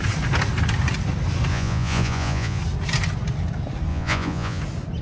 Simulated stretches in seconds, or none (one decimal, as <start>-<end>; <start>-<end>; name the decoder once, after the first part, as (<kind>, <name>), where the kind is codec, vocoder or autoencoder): 1.5-2.6 (vocoder, Vocos); 3.9-4.6